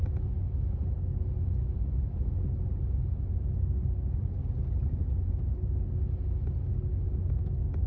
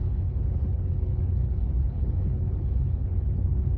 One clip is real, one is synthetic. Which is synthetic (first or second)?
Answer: second